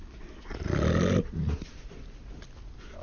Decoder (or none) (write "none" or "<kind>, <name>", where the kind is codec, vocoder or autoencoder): none